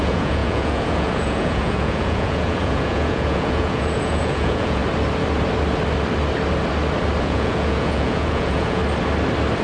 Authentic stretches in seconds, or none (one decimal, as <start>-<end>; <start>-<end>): 4.8-7.2; 8.8-9.6